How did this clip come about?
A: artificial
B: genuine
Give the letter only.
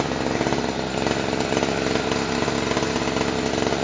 B